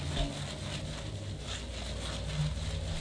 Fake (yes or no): no